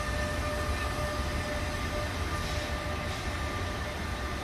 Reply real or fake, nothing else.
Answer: real